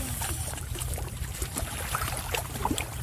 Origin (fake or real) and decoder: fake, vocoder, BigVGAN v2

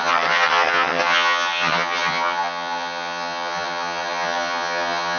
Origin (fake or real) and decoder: fake, vocoder, HiFi-GAN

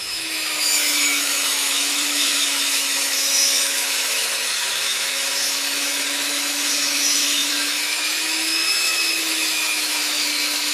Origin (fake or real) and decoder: fake, autoencoder, DAC-VAE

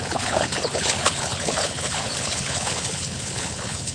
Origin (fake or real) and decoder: fake, codec, HILCodec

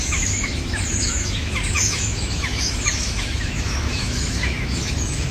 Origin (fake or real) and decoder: fake, autoencoder, DAC-VAE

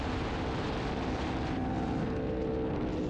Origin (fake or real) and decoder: real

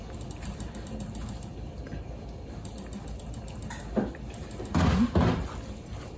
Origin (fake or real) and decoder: real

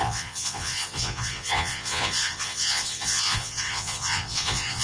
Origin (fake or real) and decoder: fake, vocoder, Vocos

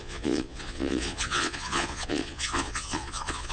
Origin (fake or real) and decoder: fake, vocoder, Vocos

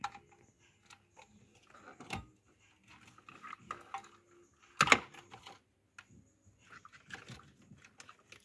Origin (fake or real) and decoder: real